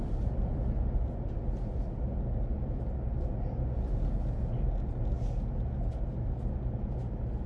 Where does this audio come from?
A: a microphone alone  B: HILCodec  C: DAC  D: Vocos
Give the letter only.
A